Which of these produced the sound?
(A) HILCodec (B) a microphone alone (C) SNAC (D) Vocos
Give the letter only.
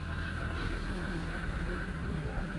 C